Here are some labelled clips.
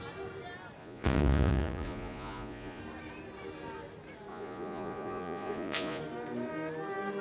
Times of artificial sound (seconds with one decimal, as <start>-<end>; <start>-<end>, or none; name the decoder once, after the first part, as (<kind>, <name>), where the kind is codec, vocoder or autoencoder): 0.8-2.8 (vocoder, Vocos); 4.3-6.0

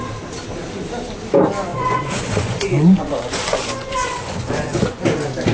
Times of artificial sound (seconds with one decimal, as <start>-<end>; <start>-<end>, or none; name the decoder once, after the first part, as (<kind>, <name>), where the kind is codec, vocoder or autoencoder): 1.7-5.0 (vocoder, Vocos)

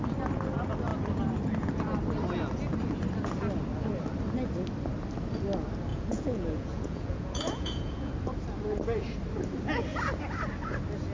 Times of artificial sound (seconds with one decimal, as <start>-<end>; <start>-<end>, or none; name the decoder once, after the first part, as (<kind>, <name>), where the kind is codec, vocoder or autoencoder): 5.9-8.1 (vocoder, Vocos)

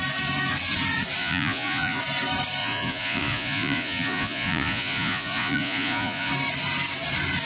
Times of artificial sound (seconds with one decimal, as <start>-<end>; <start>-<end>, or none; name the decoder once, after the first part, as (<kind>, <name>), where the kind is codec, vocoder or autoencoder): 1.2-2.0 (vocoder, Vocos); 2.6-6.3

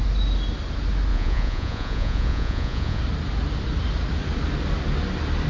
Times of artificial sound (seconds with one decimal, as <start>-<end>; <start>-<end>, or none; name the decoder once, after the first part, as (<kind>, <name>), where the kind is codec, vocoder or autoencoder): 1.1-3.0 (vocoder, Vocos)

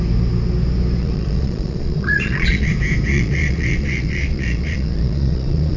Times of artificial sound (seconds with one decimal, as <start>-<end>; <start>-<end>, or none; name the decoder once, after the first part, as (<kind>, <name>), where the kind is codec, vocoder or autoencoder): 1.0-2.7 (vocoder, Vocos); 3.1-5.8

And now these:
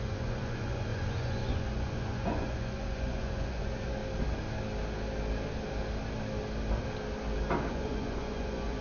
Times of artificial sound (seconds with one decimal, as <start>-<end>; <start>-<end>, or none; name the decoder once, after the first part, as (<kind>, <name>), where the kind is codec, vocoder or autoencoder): 0.0-4.0 (vocoder, Vocos); 7.7-8.8